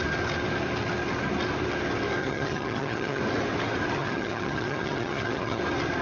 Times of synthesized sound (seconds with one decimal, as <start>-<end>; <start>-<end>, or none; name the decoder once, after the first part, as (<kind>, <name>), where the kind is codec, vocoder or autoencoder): 2.2-3.2 (vocoder, HiFi-GAN); 4.0-5.6